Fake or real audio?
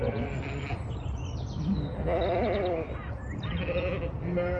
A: real